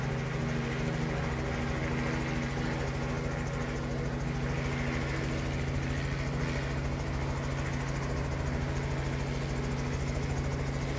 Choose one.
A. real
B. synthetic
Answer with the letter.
A